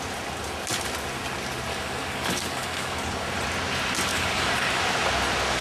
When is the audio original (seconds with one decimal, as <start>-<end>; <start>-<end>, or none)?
0.0-1.7; 3.3-4.1; 4.8-5.6